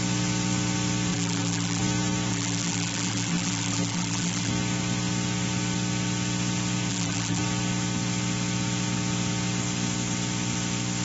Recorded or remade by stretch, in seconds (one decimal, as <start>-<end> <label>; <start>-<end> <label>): 0.0-1.1 recorded; 1.1-1.8 remade; 1.8-2.3 recorded; 2.3-4.5 remade; 4.5-6.9 recorded; 6.9-7.4 remade; 7.4-11.0 recorded